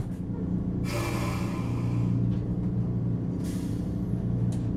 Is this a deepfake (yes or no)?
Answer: no